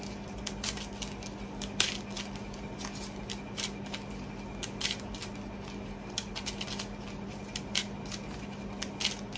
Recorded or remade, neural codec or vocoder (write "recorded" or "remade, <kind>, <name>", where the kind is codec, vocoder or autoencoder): recorded